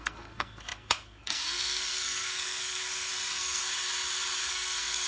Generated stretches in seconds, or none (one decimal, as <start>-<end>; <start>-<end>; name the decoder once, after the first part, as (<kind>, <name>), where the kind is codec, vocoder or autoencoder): 0.0-3.6 (codec, SNAC); 4.5-5.1